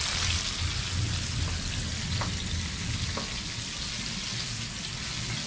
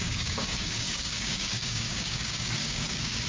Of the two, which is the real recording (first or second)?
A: first